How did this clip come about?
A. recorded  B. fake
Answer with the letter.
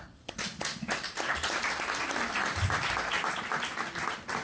A